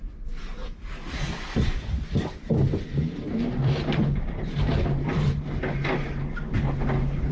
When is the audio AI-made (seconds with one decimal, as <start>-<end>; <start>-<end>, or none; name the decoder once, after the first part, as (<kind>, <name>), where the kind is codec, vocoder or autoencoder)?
3.6-5.2 (vocoder, BigVGAN v2)